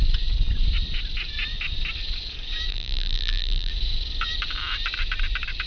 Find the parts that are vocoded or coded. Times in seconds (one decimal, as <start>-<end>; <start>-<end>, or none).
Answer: 2.7-3.7